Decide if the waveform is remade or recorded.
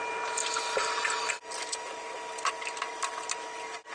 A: recorded